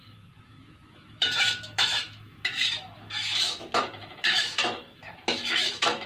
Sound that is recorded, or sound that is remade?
remade